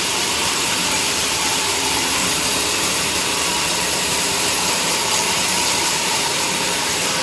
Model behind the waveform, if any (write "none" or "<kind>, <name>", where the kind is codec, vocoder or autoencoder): vocoder, BigVGAN v2